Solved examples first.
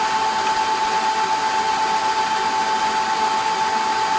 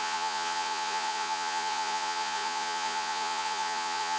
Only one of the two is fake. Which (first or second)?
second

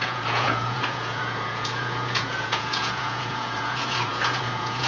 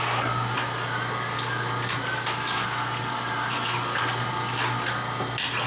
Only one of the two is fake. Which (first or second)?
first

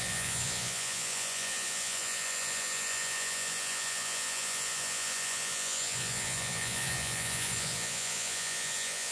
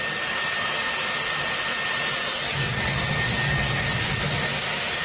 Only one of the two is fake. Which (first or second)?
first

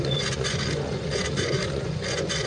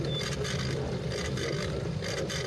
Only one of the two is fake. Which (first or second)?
first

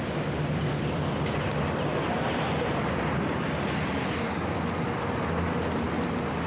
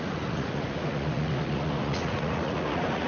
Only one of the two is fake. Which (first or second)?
second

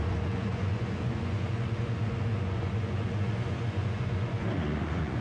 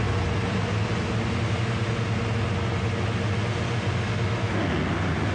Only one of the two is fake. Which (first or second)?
first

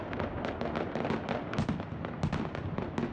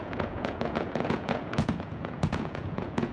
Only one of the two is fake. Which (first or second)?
second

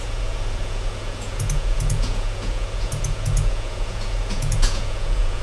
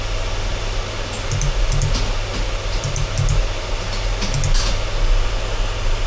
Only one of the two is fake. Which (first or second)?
first